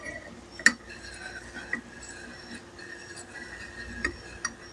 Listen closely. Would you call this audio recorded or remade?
recorded